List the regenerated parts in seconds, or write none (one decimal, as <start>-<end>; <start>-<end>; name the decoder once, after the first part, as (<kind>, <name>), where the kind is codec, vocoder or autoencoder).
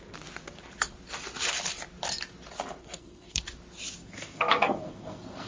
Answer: 2.8-3.4 (codec, SNAC); 4.0-5.5